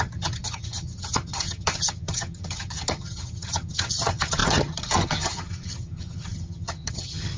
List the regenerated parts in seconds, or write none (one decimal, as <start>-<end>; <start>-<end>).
0.0-7.4